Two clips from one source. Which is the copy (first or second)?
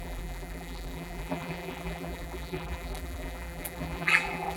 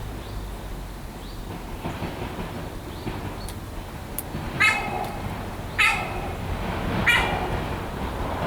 first